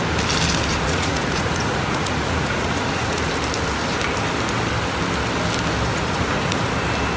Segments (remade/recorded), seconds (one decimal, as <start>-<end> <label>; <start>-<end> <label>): 0.0-0.7 recorded; 0.7-3.3 remade; 3.3-5.9 recorded; 5.9-6.7 remade; 6.7-7.2 recorded